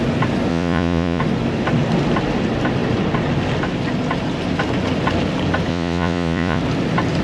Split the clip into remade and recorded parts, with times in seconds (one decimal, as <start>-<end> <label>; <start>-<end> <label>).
0.0-0.5 recorded; 0.5-1.2 remade; 1.2-5.7 recorded; 5.7-6.6 remade; 6.6-7.2 recorded